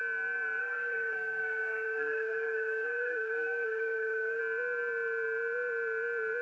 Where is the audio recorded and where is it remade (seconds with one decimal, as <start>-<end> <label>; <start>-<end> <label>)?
0.0-0.6 recorded; 0.6-4.4 remade; 4.4-6.4 recorded